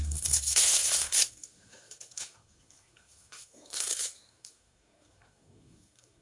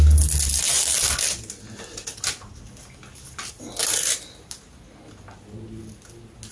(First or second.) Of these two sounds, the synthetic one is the first